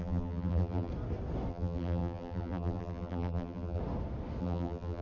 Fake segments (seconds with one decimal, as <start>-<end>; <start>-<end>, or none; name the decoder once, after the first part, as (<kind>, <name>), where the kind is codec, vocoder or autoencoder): 0.0-0.9 (vocoder, BigVGAN v2); 1.5-3.8; 4.4-5.0